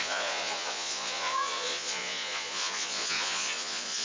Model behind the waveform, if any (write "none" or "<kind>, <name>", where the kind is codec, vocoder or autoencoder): vocoder, Vocos